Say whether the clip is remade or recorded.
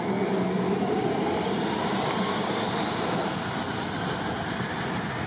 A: recorded